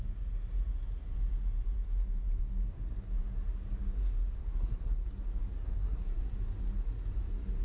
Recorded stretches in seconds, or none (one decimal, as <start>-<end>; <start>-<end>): 0.0-4.4; 5.1-5.5; 6.2-7.6